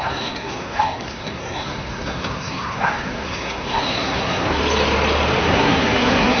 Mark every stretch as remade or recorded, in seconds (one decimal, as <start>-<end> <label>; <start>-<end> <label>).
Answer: 0.0-4.6 remade; 4.6-5.4 recorded; 5.4-6.4 remade